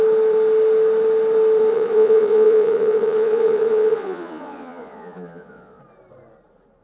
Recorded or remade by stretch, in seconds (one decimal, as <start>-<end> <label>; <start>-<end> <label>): 0.0-1.7 recorded; 1.7-5.8 remade; 5.8-6.8 recorded